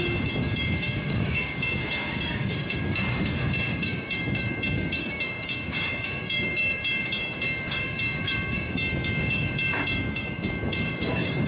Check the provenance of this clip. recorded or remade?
remade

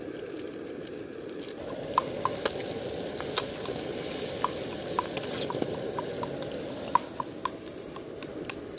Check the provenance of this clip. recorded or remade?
recorded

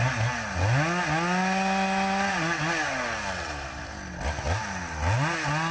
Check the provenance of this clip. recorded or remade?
recorded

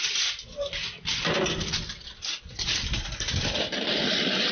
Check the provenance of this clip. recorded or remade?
recorded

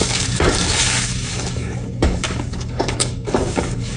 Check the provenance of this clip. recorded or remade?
remade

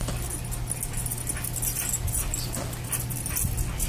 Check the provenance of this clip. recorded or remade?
recorded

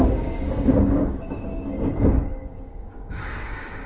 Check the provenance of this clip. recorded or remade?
remade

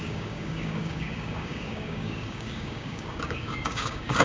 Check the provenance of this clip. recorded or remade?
remade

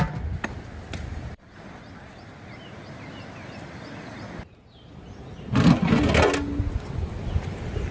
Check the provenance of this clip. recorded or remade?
recorded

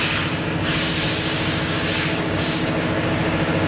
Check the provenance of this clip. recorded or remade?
remade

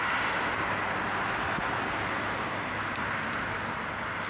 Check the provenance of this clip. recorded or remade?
recorded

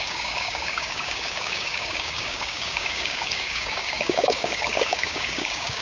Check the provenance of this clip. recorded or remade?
remade